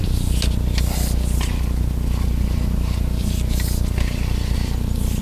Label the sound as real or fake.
real